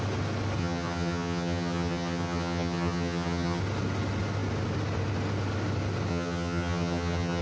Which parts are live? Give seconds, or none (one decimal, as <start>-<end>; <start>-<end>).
0.0-0.6; 3.6-6.1

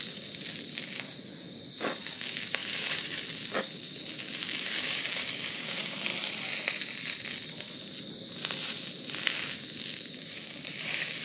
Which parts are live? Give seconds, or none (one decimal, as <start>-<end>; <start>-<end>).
6.1-9.3